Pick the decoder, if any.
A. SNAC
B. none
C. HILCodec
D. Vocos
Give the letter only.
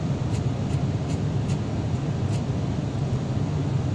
B